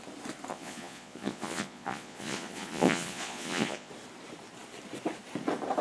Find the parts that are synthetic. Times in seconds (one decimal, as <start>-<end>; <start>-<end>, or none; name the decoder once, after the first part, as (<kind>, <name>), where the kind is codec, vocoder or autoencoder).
0.5-3.9 (vocoder, Vocos)